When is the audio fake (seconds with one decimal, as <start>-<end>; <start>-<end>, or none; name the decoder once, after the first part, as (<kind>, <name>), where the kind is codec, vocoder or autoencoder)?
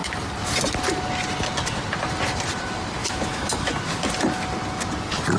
3.0-3.7 (autoencoder, DAC-VAE)